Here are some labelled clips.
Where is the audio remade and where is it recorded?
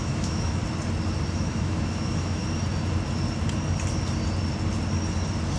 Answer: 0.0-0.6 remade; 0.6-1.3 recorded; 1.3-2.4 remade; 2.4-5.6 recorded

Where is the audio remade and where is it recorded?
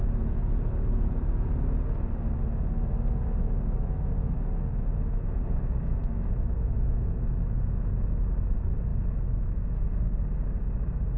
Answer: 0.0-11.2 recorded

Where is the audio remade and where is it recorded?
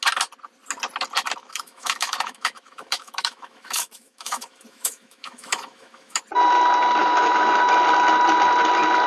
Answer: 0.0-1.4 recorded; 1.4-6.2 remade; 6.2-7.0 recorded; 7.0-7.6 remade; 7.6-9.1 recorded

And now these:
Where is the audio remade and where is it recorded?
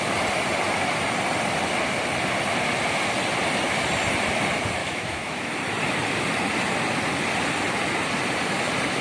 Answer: 0.0-4.8 recorded; 4.8-5.5 remade; 5.5-9.0 recorded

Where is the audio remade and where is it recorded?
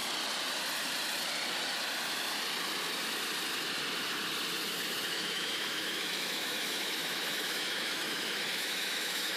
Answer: 0.0-5.1 recorded; 5.1-9.4 remade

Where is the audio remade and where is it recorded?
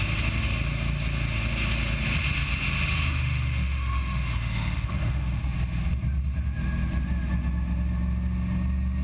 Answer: 0.0-3.0 recorded; 3.0-5.4 remade; 5.4-9.0 recorded